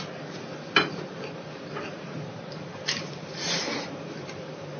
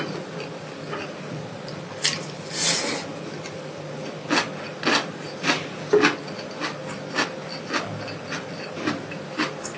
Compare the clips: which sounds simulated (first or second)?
first